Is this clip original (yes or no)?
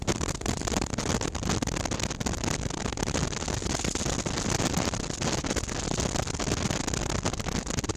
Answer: yes